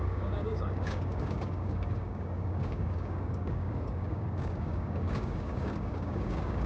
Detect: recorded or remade remade